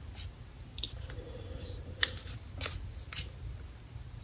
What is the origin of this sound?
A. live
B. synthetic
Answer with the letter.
A